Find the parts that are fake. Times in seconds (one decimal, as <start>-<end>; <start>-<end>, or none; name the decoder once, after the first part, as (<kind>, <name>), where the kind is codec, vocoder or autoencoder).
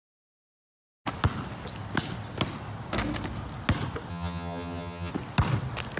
4.1-5.1 (vocoder, HiFi-GAN)